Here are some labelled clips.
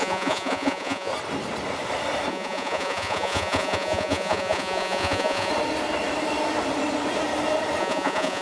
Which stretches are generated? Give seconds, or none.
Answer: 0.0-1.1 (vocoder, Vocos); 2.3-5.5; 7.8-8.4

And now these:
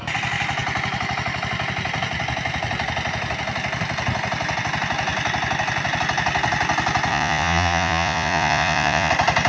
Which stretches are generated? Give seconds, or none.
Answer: 7.1-9.1 (vocoder, Vocos)

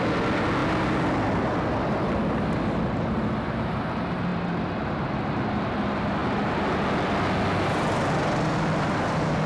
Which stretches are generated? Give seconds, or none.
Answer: none

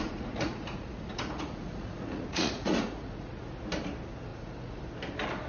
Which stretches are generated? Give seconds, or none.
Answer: 0.0-3.3 (vocoder, Vocos); 4.3-4.8

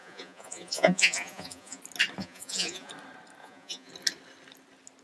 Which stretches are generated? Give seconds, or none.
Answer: 0.0-1.8 (vocoder, Vocos); 2.2-2.9; 3.4-3.9

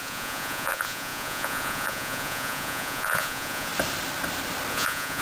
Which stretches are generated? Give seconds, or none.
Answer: 0.0-3.7 (vocoder, Vocos); 4.7-5.2